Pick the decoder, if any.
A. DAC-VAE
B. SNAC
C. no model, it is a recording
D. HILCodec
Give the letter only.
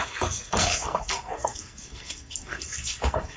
B